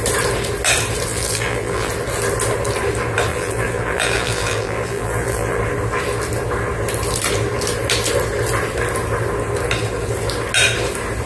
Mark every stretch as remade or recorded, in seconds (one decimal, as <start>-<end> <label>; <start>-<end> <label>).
0.0-1.1 recorded; 1.1-1.9 remade; 1.9-3.3 recorded; 3.3-5.6 remade; 5.6-11.3 recorded